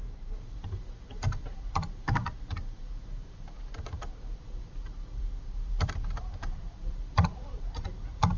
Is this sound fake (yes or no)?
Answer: yes